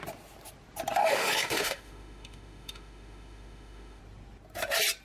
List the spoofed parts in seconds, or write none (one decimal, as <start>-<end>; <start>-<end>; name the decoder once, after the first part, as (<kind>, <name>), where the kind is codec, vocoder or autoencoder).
1.0-4.0 (autoencoder, DAC-VAE)